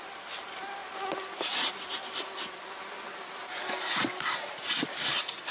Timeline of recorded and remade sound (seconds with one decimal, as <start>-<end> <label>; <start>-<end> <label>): 0.0-5.5 recorded